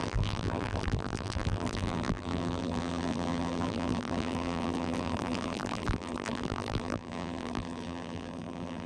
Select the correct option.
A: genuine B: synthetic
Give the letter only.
B